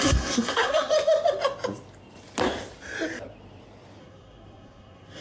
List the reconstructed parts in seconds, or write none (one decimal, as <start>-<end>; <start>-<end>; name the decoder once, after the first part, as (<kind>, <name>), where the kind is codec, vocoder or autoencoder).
0.0-0.9 (codec, SNAC); 4.0-5.2